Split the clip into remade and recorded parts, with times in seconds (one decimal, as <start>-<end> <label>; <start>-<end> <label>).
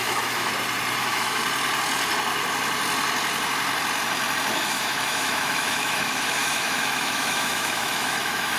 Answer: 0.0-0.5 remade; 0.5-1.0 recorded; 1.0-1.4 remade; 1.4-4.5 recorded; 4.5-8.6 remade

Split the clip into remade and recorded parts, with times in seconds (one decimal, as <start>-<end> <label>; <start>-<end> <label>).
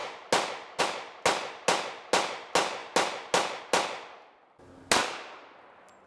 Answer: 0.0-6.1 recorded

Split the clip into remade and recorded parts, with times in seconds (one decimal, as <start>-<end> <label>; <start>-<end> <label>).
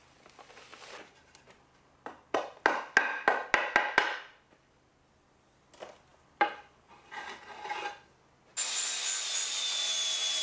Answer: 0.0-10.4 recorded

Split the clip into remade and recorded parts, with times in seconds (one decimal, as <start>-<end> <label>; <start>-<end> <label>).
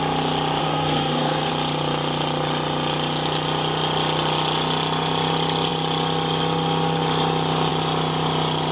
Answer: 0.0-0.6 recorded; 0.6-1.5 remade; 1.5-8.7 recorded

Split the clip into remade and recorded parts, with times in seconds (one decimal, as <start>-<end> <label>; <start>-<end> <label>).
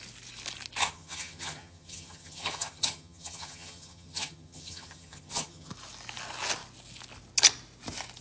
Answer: 0.0-0.8 recorded; 0.8-5.7 remade; 5.7-8.2 recorded